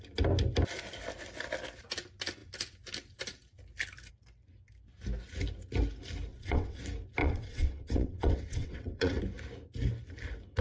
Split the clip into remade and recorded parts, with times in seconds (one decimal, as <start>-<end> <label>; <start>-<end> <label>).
0.0-6.3 recorded; 6.3-6.8 remade; 6.8-7.2 recorded; 7.2-9.2 remade; 9.2-10.6 recorded